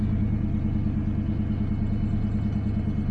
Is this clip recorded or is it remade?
recorded